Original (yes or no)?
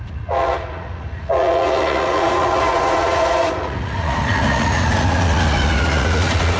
no